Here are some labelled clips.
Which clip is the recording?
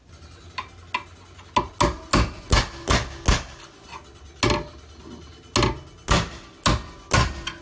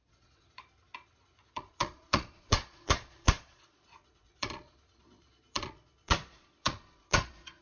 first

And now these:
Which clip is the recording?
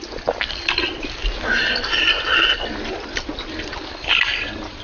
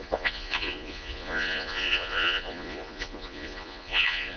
first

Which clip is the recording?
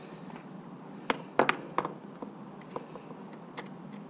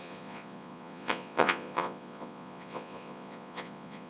first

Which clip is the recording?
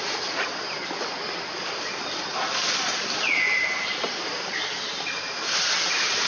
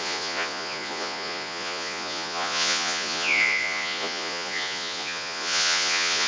first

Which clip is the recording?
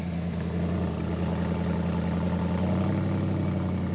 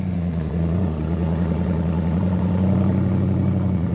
first